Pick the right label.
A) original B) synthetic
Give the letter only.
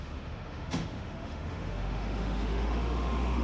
B